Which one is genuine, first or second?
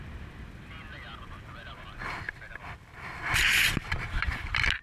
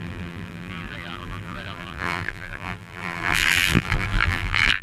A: first